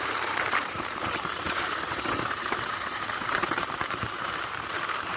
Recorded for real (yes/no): no